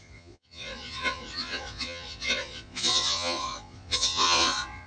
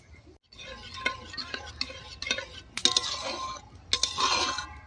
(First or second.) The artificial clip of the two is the first